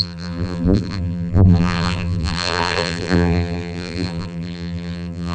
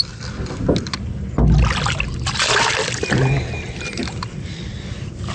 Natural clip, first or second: second